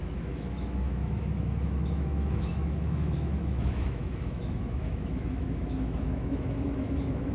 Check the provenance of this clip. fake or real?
fake